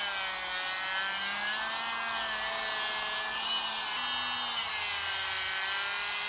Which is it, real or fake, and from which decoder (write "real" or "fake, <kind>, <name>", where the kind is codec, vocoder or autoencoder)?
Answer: real